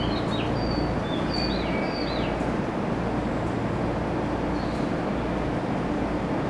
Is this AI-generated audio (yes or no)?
no